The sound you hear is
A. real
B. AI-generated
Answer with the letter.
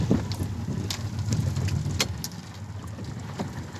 A